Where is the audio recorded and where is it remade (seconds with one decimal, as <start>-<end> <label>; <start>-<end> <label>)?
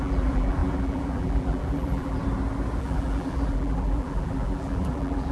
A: 0.0-2.2 remade; 2.2-2.8 recorded; 2.8-5.3 remade